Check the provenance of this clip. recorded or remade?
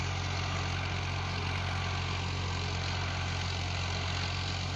recorded